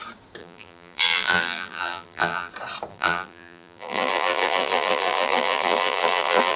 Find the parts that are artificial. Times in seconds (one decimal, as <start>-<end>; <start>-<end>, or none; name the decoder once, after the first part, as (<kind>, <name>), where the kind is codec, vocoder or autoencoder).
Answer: 0.4-2.5 (vocoder, BigVGAN v2); 2.9-6.6